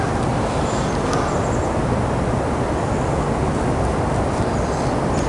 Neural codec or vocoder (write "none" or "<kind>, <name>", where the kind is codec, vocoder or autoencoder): none